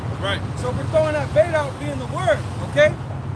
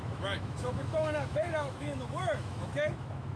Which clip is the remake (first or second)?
second